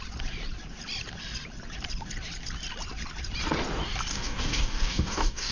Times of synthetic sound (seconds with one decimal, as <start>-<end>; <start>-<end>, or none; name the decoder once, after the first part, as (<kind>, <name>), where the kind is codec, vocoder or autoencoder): 4.1-5.5 (codec, DAC)